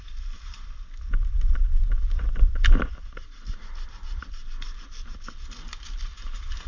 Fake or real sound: real